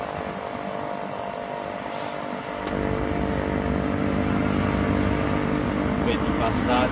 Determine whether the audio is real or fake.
real